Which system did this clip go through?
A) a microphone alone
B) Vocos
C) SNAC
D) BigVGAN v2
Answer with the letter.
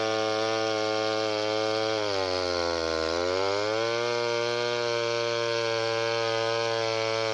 A